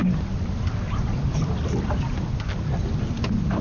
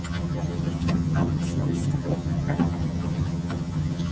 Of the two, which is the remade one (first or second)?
second